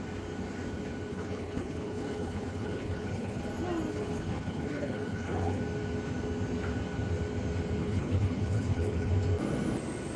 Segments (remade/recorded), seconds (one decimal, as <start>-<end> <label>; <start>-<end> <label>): 0.0-1.1 recorded; 1.1-3.4 remade; 3.4-3.9 recorded; 3.9-5.6 remade; 5.6-7.8 recorded; 7.8-9.1 remade; 9.1-10.2 recorded